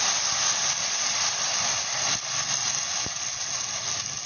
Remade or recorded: recorded